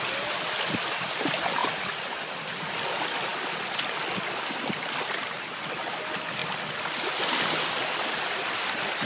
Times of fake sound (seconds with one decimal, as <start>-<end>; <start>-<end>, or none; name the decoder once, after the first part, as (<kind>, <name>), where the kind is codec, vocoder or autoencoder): none